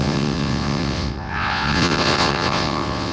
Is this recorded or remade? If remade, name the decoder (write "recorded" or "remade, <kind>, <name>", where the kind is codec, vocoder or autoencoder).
remade, vocoder, WaveNeXt